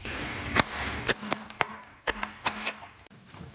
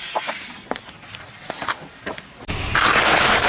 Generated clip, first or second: first